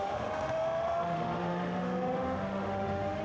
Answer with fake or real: fake